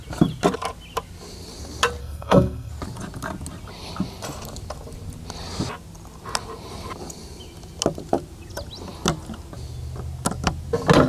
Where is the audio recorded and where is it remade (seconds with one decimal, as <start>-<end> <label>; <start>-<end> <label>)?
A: 0.0-2.0 recorded; 2.0-2.7 remade; 2.7-11.1 recorded